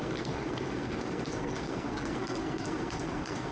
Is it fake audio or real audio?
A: fake